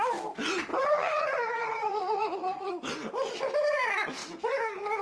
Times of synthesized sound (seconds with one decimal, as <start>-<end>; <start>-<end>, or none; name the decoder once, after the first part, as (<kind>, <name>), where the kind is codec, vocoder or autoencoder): 0.7-2.7 (vocoder, Vocos)